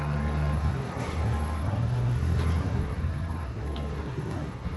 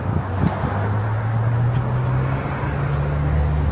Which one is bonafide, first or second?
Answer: second